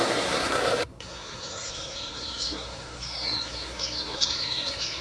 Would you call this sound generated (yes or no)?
yes